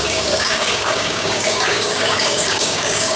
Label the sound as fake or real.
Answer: fake